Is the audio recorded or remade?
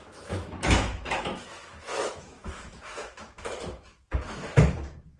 remade